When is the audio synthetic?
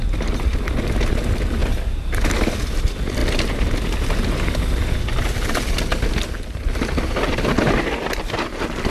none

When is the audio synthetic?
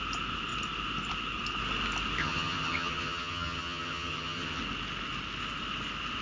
2.2-4.6 (vocoder, HiFi-GAN)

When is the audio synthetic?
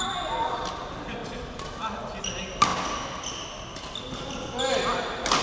none